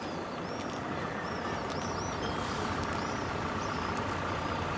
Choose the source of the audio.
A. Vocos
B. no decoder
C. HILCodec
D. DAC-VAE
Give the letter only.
B